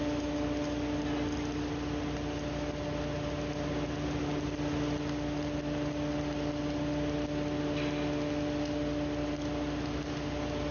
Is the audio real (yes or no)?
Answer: yes